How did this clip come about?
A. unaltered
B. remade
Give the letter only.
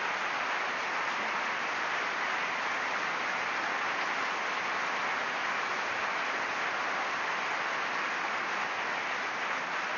A